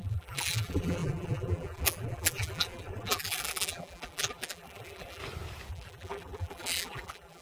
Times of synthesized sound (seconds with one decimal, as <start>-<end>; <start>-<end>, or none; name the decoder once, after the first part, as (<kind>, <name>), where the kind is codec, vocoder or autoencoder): 0.0-5.2 (vocoder, BigVGAN v2); 5.7-7.4